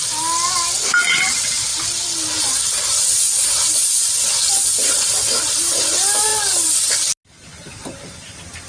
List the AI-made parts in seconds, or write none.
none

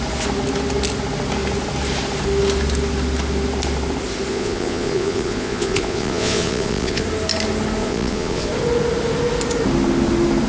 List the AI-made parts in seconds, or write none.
4.3-7.0 (vocoder, Vocos); 7.8-8.5

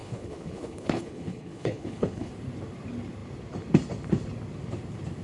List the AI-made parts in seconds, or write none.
0.0-2.3 (codec, HILCodec)

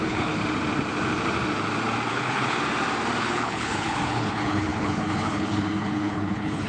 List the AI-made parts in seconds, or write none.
0.0-0.4 (codec, HILCodec); 2.1-2.6; 3.2-6.7